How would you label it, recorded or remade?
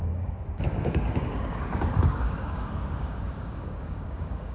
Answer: remade